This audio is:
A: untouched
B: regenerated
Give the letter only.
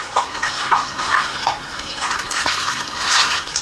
B